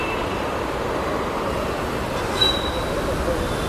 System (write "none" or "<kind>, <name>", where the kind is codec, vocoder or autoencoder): none